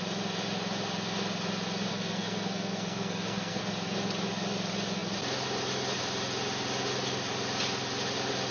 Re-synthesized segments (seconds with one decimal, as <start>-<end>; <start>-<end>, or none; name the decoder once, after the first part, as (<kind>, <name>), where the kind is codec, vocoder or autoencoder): 1.9-3.6 (codec, SNAC)